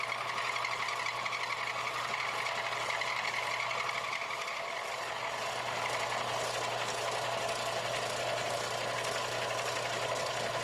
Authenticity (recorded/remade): recorded